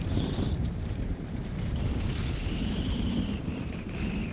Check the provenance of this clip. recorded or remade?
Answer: remade